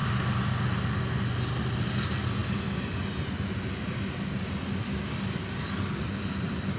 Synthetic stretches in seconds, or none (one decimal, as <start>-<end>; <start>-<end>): none